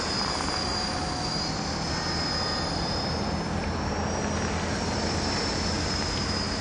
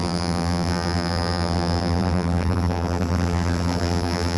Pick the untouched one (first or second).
first